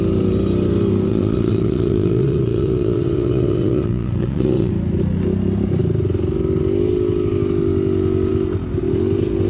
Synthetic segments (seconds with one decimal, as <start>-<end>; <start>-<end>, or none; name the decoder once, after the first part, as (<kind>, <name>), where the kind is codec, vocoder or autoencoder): 1.1-4.7 (vocoder, WaveNeXt)